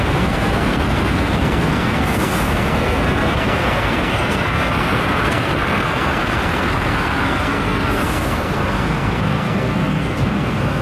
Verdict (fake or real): fake